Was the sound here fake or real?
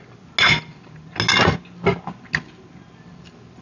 real